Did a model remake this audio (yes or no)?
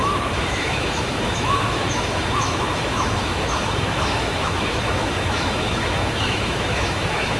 yes